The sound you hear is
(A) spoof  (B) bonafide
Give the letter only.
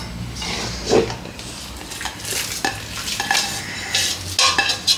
B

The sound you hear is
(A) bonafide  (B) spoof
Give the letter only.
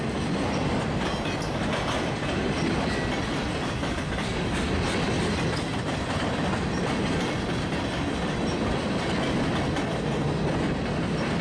A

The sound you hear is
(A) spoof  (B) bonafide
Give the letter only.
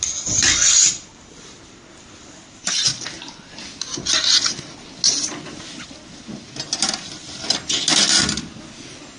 B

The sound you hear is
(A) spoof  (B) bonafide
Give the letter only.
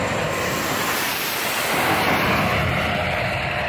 B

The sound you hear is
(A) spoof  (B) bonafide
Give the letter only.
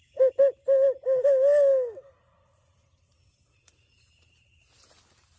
B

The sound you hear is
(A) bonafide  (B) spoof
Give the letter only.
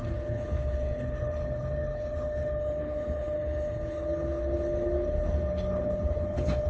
B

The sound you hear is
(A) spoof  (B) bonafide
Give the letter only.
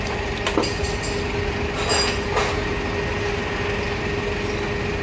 B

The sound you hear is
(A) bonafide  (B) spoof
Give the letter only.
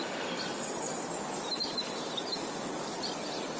A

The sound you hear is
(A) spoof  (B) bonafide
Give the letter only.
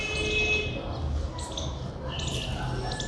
B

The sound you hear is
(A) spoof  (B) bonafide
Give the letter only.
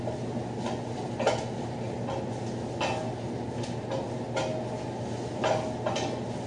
B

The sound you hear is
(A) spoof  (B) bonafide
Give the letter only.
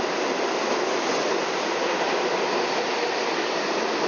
A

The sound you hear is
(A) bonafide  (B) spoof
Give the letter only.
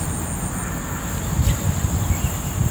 A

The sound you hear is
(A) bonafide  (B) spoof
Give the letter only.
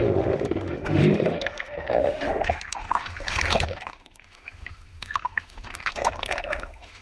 B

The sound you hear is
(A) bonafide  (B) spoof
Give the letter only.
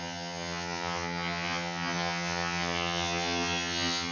B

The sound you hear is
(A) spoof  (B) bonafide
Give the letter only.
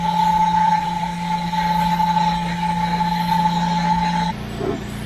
B